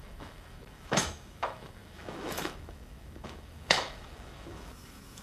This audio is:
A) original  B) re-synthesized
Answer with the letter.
B